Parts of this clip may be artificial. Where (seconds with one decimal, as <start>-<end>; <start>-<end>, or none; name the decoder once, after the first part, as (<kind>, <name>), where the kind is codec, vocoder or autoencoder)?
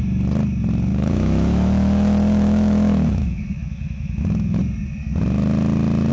0.9-4.6 (autoencoder, DAC-VAE)